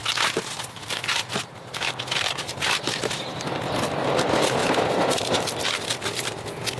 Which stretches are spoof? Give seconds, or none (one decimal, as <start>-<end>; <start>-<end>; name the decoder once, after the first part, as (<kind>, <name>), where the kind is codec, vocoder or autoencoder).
4.1-4.6 (vocoder, BigVGAN v2)

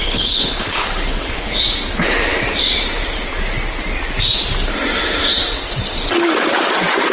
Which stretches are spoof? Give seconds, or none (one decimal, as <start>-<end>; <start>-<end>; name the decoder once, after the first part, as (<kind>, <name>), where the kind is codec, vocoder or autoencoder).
0.0-1.6 (codec, HILCodec)

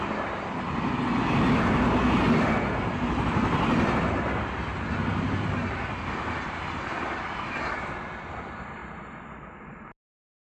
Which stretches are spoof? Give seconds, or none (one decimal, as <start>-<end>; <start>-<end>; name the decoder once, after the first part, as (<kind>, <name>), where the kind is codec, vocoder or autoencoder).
none

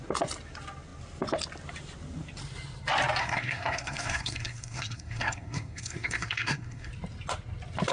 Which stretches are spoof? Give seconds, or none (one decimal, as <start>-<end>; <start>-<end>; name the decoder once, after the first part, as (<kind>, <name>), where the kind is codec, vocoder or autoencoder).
3.2-6.9 (codec, SNAC)